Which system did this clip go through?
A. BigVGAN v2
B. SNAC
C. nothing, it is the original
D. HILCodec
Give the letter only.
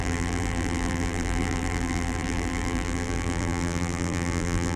A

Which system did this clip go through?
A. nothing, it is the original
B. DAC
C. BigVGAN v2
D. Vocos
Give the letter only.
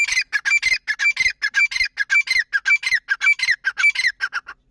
A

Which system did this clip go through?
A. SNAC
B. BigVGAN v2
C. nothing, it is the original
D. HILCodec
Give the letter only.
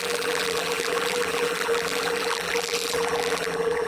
B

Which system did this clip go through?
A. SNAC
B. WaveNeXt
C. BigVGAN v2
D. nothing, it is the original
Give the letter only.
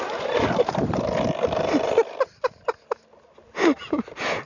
D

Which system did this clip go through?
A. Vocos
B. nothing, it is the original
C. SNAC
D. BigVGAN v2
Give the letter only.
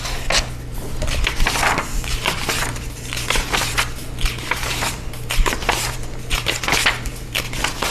B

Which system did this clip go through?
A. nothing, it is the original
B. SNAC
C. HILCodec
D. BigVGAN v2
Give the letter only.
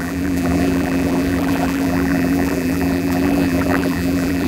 D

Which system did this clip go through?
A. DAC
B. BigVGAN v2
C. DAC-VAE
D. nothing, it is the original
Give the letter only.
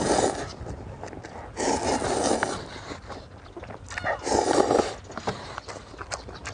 D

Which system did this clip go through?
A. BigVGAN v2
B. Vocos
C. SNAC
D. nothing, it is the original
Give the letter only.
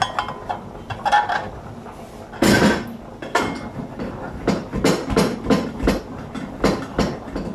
D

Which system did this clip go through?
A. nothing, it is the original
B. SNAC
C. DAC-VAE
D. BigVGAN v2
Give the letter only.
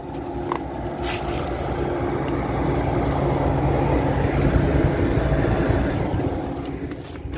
A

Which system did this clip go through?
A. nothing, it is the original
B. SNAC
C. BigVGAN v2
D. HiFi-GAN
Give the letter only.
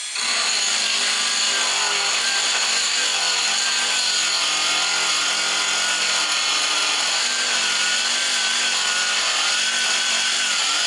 A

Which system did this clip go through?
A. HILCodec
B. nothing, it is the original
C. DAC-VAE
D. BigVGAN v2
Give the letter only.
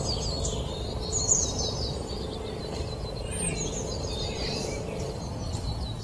B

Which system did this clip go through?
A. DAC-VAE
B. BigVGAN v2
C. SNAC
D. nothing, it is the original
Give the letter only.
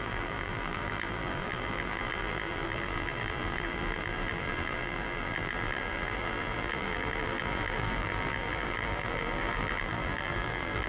B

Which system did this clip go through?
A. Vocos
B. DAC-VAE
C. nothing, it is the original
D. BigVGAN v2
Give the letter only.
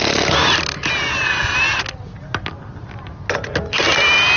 C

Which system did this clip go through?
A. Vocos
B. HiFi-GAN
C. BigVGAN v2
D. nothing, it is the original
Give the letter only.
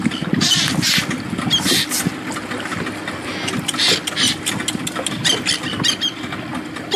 D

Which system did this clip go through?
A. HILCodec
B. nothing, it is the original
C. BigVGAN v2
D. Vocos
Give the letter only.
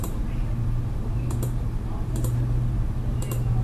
C